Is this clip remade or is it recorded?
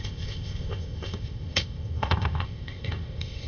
remade